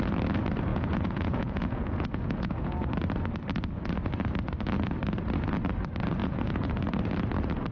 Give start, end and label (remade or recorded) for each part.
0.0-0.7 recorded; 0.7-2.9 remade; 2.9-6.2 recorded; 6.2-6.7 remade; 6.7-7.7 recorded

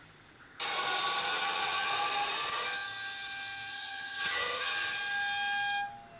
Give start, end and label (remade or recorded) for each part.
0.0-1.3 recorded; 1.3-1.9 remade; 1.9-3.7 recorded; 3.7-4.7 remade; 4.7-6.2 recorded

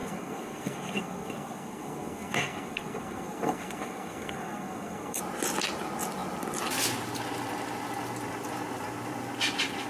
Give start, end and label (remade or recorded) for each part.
0.0-5.2 remade; 5.2-9.9 recorded